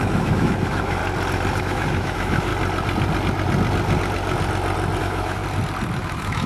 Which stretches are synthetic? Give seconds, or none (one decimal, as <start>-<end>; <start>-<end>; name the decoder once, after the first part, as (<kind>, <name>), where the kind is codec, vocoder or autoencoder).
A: 0.0-1.0 (autoencoder, DAC-VAE); 1.6-2.5; 5.0-5.4; 6.0-6.5